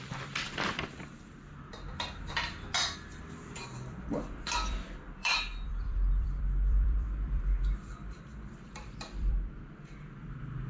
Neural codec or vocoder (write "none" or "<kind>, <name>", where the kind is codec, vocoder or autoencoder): vocoder, BigVGAN v2